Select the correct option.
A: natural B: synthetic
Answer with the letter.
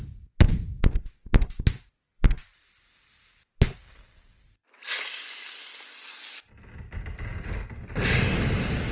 A